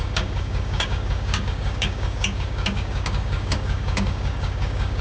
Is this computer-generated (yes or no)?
yes